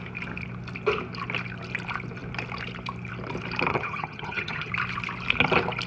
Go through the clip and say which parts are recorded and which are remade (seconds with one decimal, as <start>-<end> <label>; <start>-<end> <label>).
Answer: 0.0-3.7 recorded; 3.7-4.7 remade; 4.7-5.9 recorded